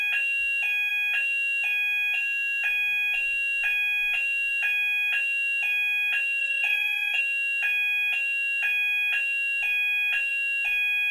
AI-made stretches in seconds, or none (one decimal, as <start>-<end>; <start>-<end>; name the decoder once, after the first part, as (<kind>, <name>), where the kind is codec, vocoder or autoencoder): 6.4-7.2 (vocoder, Vocos)